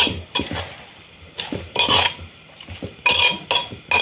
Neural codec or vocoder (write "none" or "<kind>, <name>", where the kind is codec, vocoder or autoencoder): none